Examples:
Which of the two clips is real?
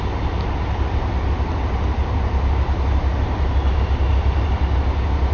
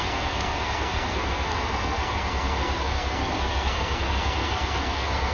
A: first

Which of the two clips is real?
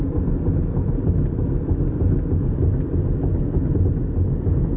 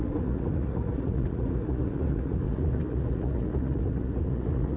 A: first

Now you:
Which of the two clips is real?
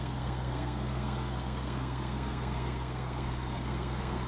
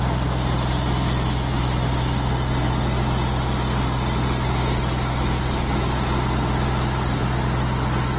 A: second